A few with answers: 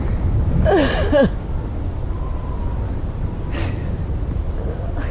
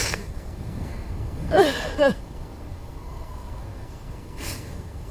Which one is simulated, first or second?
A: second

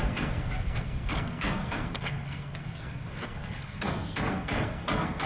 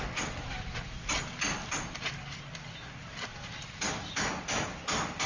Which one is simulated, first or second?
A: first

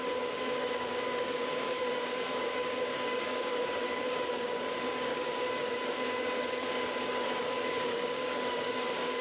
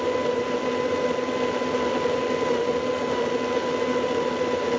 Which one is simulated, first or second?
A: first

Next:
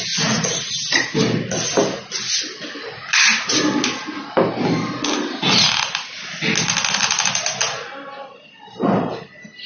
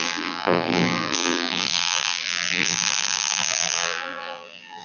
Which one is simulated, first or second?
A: second